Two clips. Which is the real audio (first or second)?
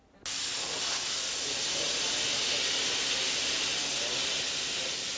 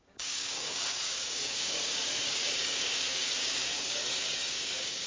first